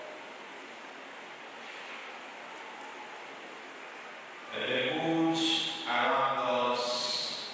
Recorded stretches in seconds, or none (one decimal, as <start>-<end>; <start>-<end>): 0.0-7.5